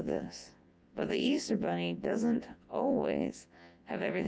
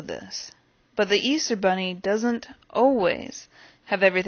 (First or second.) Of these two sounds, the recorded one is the second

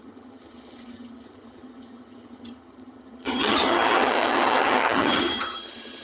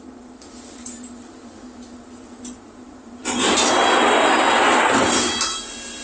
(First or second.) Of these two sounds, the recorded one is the second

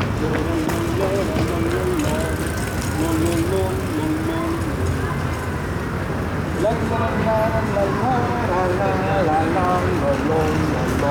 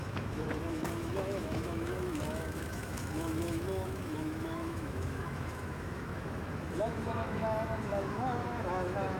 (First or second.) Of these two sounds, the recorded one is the first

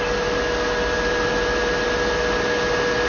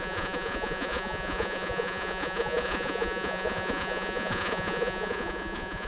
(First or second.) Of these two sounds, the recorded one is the first